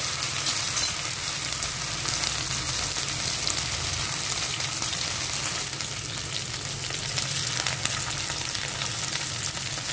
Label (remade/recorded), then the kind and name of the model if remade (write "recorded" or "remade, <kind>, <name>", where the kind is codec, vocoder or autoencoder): recorded